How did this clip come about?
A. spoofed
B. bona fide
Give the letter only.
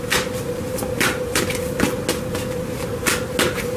B